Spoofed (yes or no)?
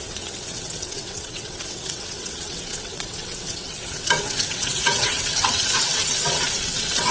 yes